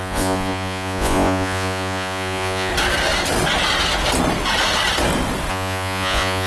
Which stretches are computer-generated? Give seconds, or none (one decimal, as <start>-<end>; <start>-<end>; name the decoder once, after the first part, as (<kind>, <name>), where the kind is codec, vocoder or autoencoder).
0.0-2.7 (vocoder, Vocos); 5.5-6.5